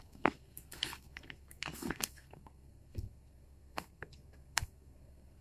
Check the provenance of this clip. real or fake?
fake